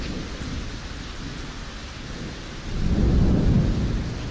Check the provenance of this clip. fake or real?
real